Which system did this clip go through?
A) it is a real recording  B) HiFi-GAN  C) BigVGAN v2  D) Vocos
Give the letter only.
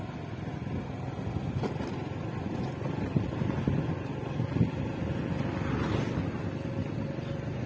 A